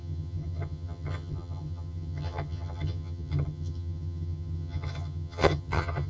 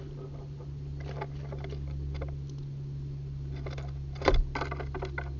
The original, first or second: second